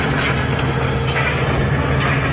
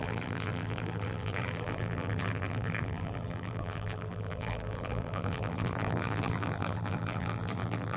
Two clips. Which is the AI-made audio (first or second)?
second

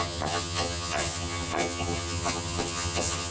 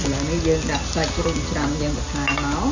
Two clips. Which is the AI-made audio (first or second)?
first